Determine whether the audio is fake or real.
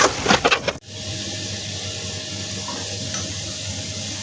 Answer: real